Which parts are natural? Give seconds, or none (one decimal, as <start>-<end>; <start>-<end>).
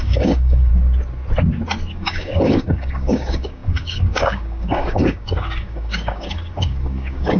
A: 0.7-1.9